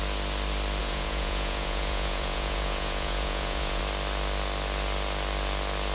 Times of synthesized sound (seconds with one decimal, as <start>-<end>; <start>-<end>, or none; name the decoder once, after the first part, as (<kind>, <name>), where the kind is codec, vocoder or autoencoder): 0.8-3.8 (vocoder, Vocos)